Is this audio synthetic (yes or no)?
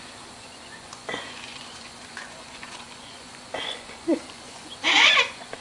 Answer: yes